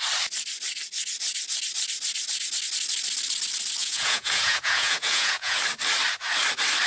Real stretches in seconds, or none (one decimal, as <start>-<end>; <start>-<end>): 0.0-3.8; 5.6-6.9